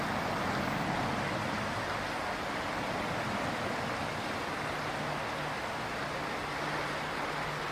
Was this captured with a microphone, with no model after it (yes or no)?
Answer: yes